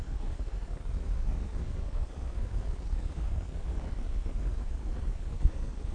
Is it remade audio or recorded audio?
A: remade